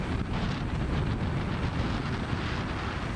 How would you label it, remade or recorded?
recorded